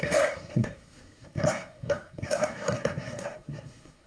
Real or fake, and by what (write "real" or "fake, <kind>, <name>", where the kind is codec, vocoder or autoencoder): fake, codec, SNAC